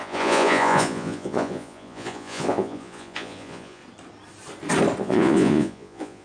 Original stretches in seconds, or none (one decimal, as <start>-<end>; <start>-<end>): 3.8-5.0